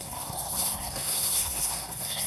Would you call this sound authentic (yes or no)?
no